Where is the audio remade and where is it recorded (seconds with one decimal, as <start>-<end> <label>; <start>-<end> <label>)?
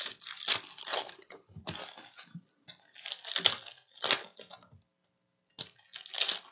0.0-0.8 recorded; 0.8-1.6 remade; 1.6-6.5 recorded